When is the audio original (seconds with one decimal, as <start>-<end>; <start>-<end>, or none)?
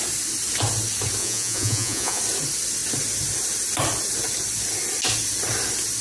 0.0-1.2; 2.2-6.0